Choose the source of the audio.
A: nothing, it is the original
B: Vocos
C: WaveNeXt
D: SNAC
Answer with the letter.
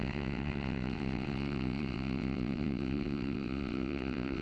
C